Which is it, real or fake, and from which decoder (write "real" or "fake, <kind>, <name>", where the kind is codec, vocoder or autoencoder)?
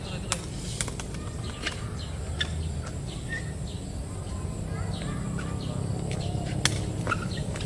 real